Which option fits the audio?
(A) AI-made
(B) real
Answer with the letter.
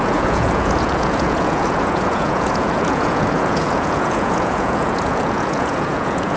A